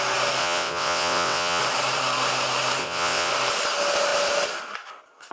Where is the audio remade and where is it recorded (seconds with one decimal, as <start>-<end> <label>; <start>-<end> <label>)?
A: 0.0-0.4 recorded; 0.4-1.6 remade; 1.6-2.8 recorded; 2.8-3.3 remade; 3.3-5.3 recorded